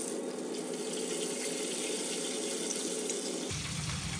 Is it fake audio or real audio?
real